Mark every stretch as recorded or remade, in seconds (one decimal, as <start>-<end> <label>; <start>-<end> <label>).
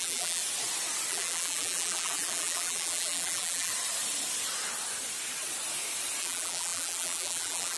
0.0-0.4 remade; 0.4-1.1 recorded; 1.1-3.7 remade; 3.7-6.2 recorded; 6.2-7.8 remade